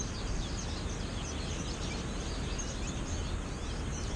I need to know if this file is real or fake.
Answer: real